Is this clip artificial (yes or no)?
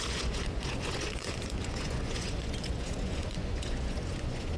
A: yes